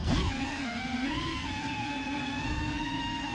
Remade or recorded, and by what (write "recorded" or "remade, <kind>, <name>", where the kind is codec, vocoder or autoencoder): remade, codec, SNAC